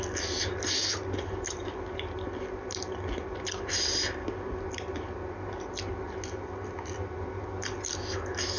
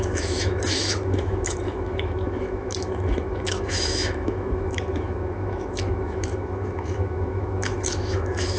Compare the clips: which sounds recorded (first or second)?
first